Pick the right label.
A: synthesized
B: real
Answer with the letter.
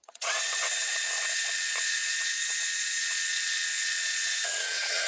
A